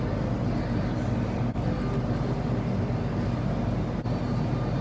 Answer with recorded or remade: recorded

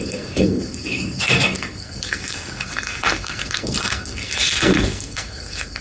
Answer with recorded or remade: remade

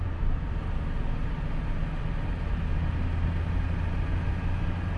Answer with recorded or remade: recorded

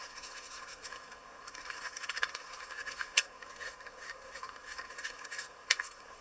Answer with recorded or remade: remade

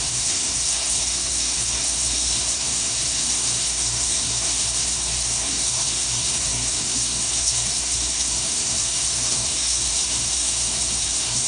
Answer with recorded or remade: remade